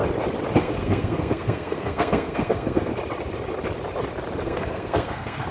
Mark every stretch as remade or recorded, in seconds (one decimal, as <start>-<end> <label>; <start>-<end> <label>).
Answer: 0.0-0.6 recorded; 0.6-2.9 remade; 2.9-4.4 recorded; 4.4-5.5 remade

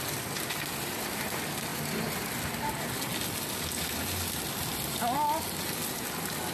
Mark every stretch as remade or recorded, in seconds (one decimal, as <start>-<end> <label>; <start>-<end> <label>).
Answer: 0.0-6.5 recorded

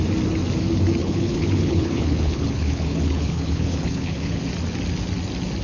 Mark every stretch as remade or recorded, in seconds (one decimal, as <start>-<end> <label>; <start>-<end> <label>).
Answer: 0.0-1.0 recorded; 1.0-4.4 remade; 4.4-5.6 recorded